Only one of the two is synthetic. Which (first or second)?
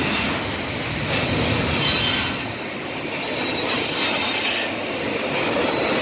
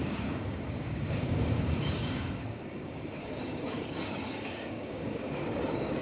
second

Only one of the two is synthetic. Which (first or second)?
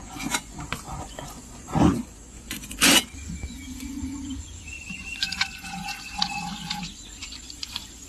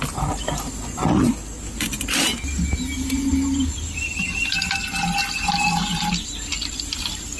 first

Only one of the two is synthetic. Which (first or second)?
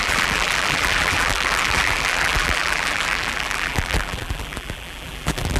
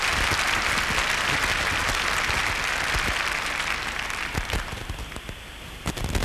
first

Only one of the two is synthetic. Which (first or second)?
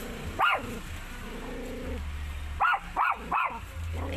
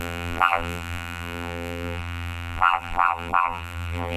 second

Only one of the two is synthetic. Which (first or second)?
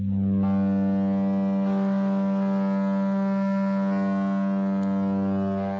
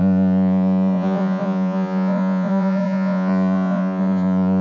second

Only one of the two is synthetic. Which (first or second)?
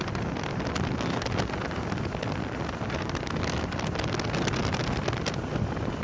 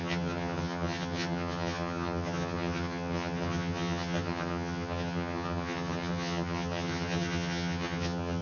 second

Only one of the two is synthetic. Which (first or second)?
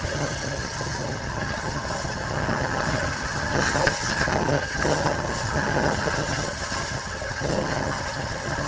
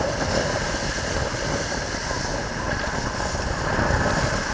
first